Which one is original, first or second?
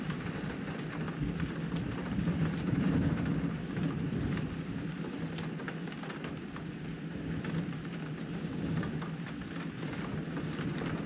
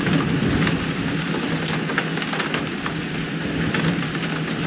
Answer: second